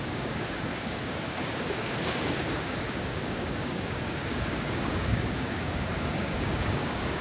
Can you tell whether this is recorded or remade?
remade